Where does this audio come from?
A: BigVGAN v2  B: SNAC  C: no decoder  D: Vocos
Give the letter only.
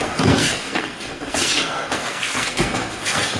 B